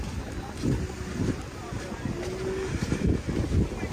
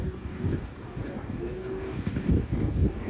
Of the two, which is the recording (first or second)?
first